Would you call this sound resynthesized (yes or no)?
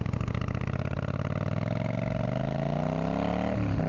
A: no